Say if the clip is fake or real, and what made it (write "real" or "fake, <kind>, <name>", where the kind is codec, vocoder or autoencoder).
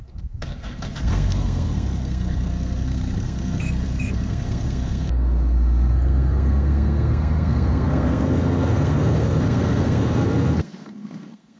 fake, codec, SNAC